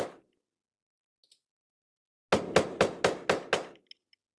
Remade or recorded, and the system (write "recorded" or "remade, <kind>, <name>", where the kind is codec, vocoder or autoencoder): recorded